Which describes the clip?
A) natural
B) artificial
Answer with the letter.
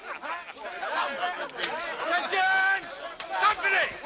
A